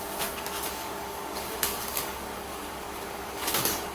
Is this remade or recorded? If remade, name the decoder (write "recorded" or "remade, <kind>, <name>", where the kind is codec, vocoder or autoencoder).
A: remade, codec, DAC